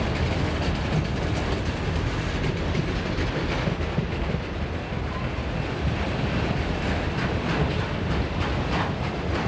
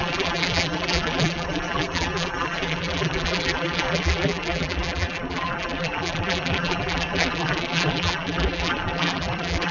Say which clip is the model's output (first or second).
second